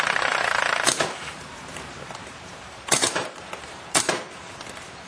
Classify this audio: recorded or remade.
remade